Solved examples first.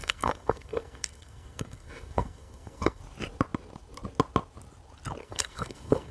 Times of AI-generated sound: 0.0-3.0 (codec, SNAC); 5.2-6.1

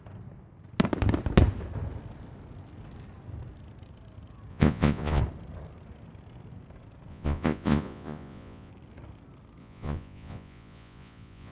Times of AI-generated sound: 4.5-5.2 (vocoder, Vocos); 7.1-8.7; 9.6-11.5

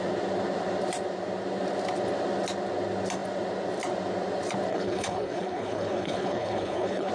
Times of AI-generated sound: 4.7-7.1 (codec, HILCodec)

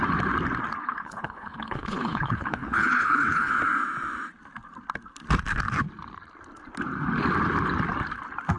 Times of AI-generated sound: 0.8-3.5 (codec, HILCodec)

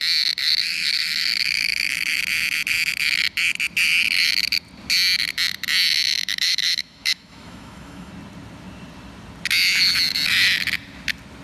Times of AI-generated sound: 0.4-2.2 (autoencoder, DAC-VAE); 6.3-8.1

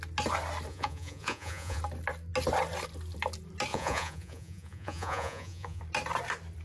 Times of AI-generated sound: 0.7-1.8 (vocoder, Vocos); 3.7-5.8